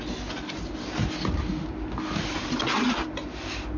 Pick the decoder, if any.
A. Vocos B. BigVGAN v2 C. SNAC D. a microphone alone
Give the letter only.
D